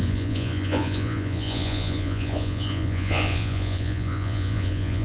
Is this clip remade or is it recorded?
remade